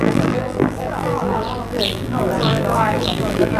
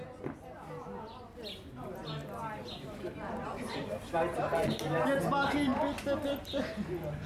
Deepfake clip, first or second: first